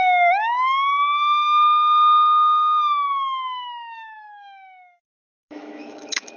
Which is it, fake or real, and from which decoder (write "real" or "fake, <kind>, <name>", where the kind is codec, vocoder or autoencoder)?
fake, autoencoder, DAC-VAE